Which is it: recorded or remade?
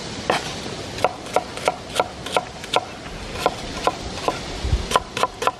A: recorded